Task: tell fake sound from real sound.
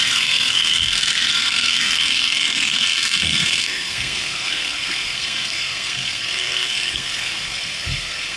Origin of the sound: fake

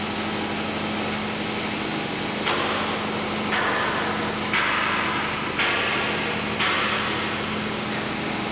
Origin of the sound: real